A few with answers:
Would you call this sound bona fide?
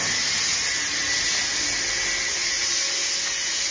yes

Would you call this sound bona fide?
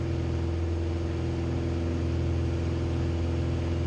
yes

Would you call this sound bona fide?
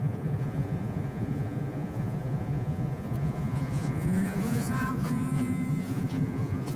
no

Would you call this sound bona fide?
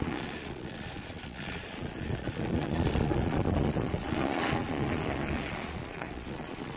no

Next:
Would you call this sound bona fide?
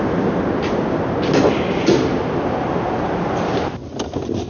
yes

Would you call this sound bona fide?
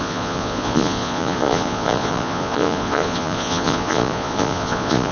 no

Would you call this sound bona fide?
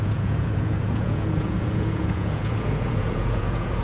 no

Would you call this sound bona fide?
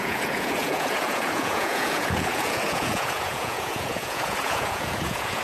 no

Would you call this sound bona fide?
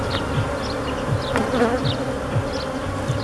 yes